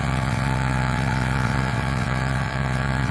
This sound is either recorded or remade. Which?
remade